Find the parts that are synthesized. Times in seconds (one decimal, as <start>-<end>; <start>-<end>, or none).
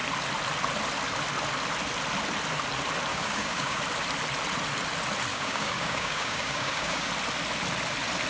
3.1-3.8; 5.3-7.1